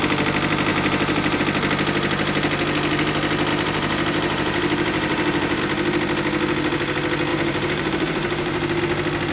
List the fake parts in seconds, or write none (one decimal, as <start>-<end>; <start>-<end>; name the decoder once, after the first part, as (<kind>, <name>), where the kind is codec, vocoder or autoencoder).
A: 0.7-1.4 (vocoder, BigVGAN v2); 3.5-5.6; 7.3-8.8